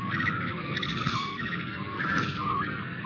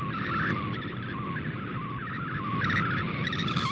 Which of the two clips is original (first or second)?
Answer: second